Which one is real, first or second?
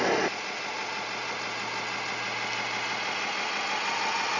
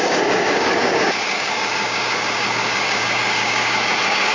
first